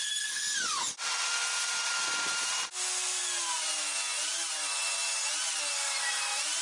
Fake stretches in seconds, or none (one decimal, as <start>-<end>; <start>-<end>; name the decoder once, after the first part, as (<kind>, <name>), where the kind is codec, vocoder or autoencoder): none